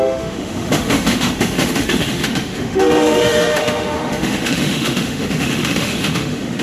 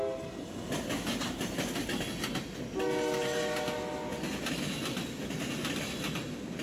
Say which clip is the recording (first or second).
second